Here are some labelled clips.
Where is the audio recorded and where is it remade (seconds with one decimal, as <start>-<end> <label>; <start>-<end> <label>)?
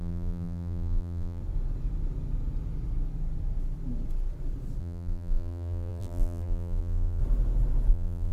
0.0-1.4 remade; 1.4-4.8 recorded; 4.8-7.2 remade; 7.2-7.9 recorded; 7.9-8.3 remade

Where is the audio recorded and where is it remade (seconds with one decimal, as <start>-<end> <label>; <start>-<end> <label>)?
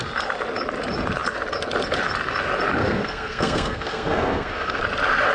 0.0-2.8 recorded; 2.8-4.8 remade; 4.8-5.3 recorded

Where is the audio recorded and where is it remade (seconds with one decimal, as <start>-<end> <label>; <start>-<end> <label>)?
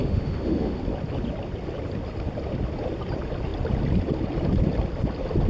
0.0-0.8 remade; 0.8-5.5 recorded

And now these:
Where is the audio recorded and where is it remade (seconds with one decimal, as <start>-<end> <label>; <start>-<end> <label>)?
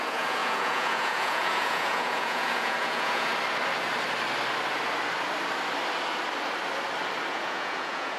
0.0-3.3 remade; 3.3-7.3 recorded; 7.3-8.2 remade